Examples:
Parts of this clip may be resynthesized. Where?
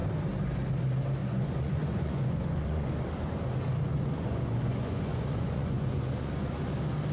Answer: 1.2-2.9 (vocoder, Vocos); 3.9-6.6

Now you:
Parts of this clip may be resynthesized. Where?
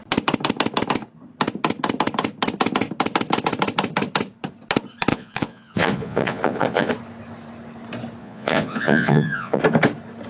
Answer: 5.1-6.9 (vocoder, Vocos); 8.2-9.6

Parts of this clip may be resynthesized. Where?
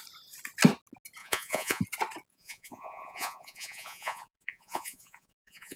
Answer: 1.2-1.8 (vocoder, Vocos); 2.3-5.8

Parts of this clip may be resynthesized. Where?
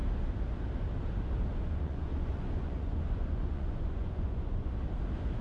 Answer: 1.5-4.7 (vocoder, Vocos)